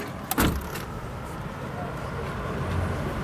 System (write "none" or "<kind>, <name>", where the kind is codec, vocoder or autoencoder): none